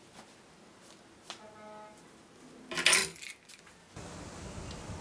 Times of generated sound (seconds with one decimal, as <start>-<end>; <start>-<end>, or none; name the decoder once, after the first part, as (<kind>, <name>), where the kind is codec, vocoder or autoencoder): none